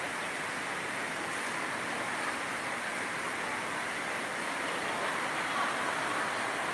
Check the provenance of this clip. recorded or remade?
recorded